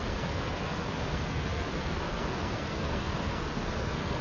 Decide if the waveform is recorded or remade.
remade